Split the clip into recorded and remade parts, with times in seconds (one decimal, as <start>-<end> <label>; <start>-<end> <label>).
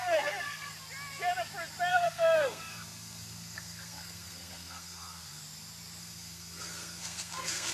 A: 0.0-0.7 remade; 0.7-1.9 recorded; 1.9-5.4 remade; 5.4-6.0 recorded; 6.0-7.7 remade